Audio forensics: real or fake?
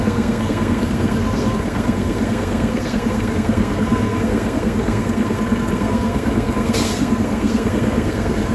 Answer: fake